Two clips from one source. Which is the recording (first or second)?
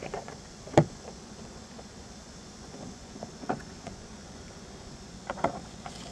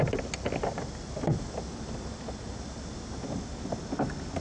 second